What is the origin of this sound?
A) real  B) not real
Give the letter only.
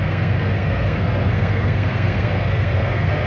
B